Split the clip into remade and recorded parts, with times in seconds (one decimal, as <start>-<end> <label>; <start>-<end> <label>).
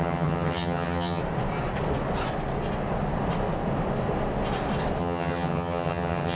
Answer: 0.0-1.2 remade; 1.2-5.0 recorded; 5.0-6.3 remade